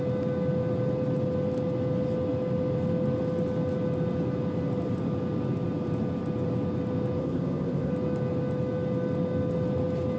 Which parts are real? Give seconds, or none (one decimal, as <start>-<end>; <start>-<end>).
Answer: 0.0-7.2; 7.9-10.2